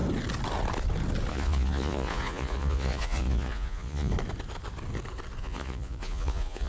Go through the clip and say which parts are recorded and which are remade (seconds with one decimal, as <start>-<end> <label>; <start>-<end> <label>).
0.0-1.3 recorded; 1.3-4.1 remade; 4.1-5.4 recorded; 5.4-6.7 remade